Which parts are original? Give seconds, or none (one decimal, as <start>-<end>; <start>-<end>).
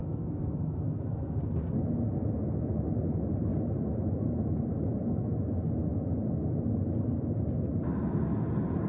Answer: 1.4-8.9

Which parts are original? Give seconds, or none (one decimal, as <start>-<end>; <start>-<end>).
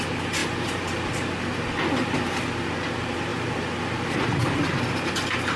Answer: 0.0-5.6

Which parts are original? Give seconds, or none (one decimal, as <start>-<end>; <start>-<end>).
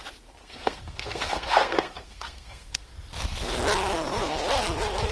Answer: 0.0-0.4; 2.9-5.1